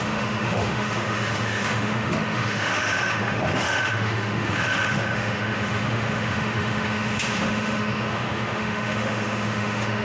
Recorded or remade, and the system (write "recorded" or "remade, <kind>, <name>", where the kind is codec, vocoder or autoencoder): remade, autoencoder, DAC-VAE